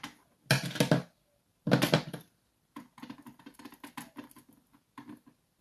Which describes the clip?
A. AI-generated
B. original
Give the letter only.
B